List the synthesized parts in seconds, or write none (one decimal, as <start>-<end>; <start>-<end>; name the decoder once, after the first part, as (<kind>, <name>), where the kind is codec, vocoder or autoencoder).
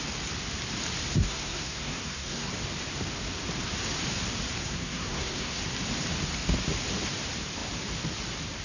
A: 1.1-2.5 (codec, SNAC); 4.6-5.6